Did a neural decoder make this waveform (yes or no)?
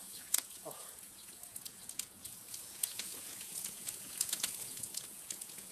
yes